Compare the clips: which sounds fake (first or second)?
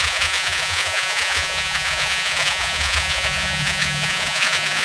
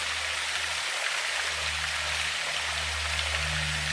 first